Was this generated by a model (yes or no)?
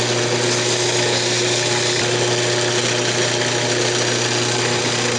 no